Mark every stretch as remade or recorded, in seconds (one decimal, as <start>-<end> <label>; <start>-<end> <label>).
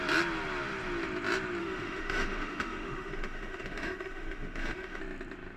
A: 0.0-1.6 recorded; 1.6-5.0 remade; 5.0-5.6 recorded